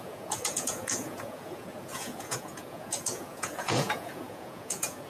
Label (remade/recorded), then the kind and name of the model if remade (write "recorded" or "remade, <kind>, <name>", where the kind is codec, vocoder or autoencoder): remade, vocoder, Vocos